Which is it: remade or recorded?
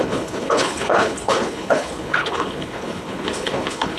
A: remade